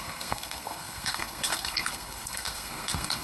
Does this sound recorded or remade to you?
remade